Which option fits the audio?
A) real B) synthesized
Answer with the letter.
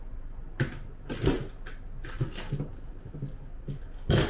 A